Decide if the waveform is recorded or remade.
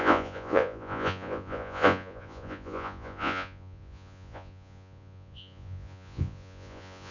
remade